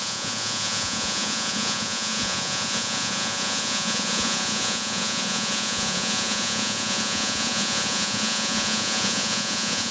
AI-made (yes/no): yes